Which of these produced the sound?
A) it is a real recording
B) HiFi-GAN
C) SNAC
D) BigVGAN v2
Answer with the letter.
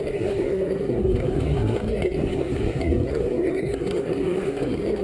C